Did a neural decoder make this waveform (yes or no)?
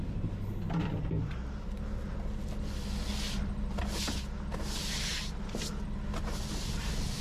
no